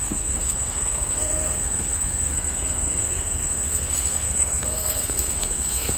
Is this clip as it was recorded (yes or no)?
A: no